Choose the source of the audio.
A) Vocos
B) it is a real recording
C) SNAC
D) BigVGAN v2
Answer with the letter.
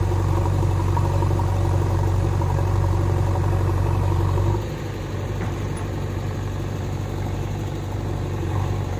D